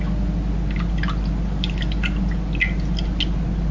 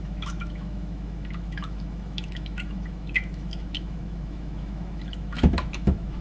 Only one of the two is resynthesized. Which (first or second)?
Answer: second